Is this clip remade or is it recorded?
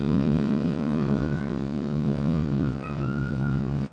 remade